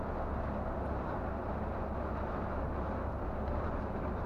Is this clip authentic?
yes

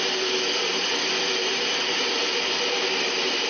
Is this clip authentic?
no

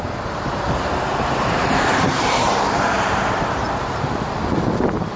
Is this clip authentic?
no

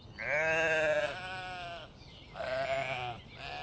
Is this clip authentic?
yes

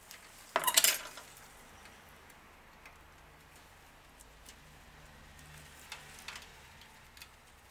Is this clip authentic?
yes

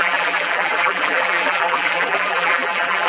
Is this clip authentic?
no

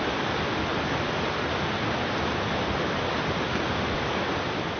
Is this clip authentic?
yes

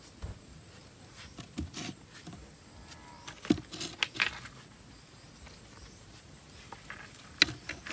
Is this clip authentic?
yes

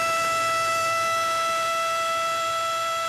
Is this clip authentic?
no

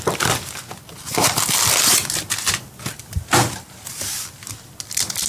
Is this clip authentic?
yes